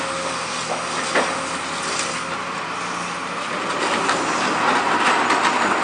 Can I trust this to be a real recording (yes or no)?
yes